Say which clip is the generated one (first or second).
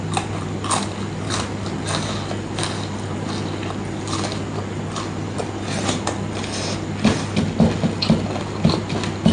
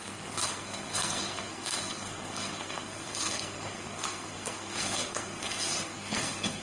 second